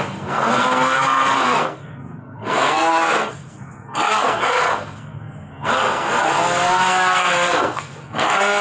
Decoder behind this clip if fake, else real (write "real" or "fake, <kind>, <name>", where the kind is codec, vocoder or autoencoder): fake, codec, SNAC